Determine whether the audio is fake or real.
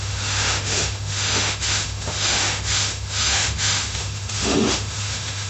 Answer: fake